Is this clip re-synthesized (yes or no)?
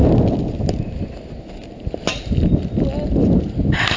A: no